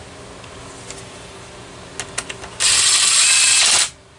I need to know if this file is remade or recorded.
recorded